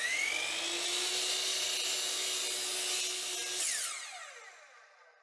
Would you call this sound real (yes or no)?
yes